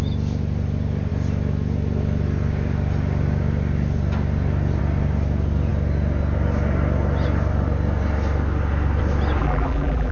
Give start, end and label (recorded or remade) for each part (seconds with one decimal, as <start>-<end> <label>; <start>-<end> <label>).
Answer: 0.0-9.4 recorded; 9.4-10.1 remade